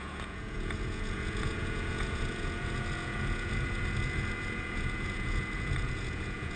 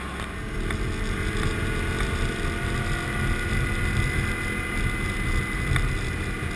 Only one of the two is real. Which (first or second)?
second